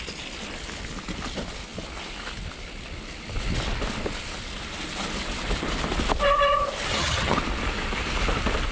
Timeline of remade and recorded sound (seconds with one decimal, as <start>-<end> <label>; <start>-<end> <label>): 0.0-6.9 recorded; 6.9-7.4 remade; 7.4-8.7 recorded